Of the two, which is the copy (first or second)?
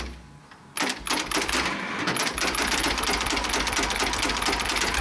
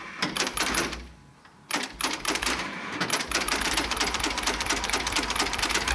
second